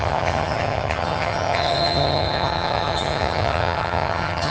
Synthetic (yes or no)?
yes